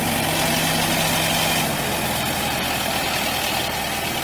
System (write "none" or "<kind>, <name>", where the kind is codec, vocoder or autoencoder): none